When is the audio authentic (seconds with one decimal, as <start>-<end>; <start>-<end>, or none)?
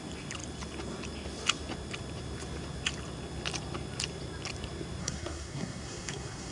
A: 0.0-5.0